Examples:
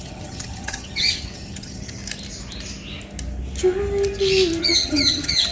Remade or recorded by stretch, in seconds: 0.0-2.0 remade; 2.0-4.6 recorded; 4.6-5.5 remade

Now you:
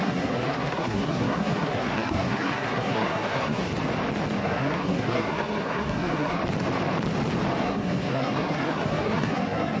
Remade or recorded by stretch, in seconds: 0.0-3.7 remade; 3.7-4.4 recorded; 4.4-6.4 remade; 6.4-7.6 recorded; 7.6-9.8 remade

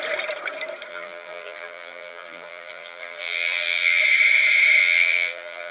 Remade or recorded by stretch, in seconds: 0.0-0.9 recorded; 0.9-4.0 remade; 4.0-4.8 recorded; 4.8-5.7 remade

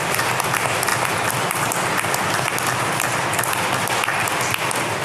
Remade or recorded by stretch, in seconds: 0.0-5.0 recorded

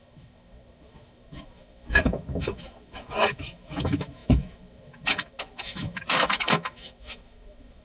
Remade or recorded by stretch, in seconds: 0.0-7.8 remade

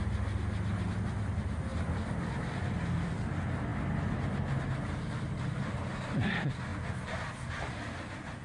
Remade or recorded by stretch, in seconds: 0.0-8.4 recorded

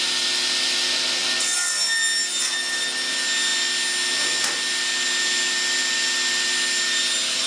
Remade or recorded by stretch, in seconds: 0.0-7.5 recorded